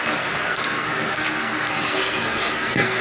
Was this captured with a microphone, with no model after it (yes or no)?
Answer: no